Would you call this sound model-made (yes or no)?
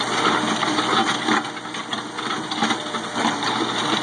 no